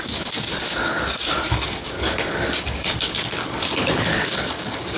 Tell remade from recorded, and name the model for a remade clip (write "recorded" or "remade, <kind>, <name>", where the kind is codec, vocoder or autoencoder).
remade, codec, DAC